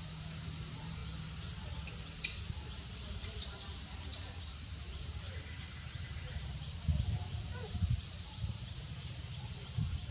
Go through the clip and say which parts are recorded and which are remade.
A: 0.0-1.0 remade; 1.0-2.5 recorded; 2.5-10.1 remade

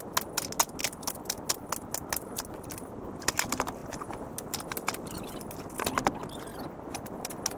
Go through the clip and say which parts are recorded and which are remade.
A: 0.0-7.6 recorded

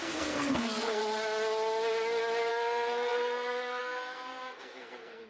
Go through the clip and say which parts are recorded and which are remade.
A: 0.0-1.0 remade; 1.0-2.5 recorded; 2.5-5.3 remade